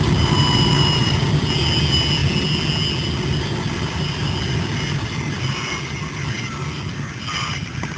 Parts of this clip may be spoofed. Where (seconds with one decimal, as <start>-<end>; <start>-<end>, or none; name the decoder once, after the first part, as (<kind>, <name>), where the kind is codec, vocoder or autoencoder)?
none